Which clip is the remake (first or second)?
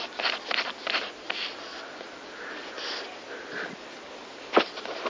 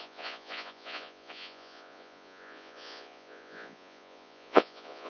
second